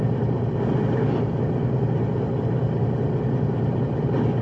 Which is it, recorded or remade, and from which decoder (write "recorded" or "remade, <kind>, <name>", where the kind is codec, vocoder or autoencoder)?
recorded